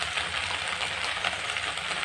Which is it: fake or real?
fake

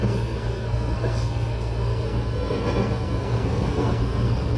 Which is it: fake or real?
fake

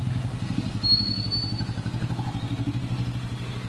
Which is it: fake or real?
real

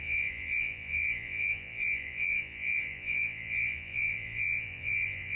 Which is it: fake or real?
fake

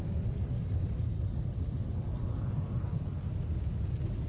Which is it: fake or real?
real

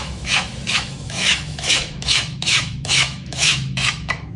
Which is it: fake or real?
fake